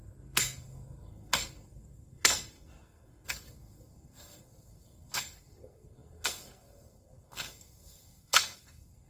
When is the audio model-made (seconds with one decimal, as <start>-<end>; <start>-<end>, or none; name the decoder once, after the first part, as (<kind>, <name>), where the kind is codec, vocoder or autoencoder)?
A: 0.0-9.1 (codec, SNAC)